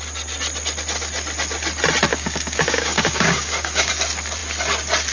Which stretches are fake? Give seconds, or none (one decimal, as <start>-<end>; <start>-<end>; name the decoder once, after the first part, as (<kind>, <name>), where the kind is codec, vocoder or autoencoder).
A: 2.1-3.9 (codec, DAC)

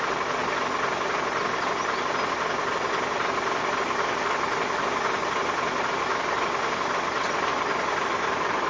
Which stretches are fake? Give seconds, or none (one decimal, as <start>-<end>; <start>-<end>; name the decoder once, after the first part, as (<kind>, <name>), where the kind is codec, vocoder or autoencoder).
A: none

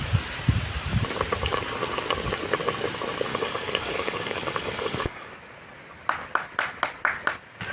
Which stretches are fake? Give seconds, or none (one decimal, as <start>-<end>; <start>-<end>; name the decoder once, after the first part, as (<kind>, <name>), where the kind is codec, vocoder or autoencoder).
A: 3.3-5.3 (codec, DAC)